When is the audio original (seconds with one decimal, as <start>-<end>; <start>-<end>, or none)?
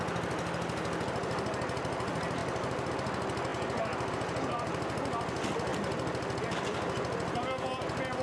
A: 0.0-2.4; 2.9-8.2